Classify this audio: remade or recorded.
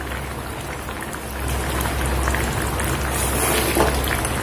recorded